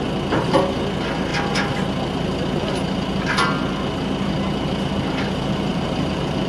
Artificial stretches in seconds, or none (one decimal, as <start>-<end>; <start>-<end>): 5.7-6.5